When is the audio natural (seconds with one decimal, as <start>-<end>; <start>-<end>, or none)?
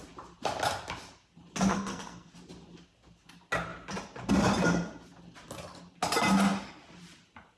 0.0-1.7; 2.3-7.6